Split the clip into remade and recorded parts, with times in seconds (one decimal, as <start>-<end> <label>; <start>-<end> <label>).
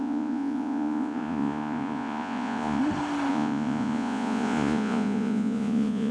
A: 0.0-2.8 remade; 2.8-3.3 recorded; 3.3-6.1 remade